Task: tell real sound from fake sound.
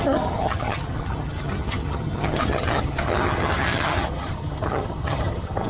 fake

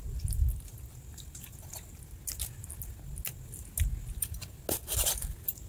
real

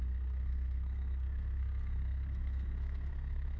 fake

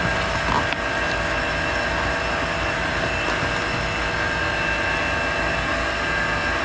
real